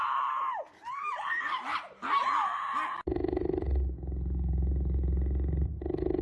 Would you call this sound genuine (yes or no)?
yes